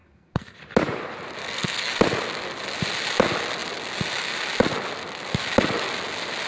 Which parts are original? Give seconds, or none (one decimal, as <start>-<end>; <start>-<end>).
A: 0.6-1.4; 1.9-6.5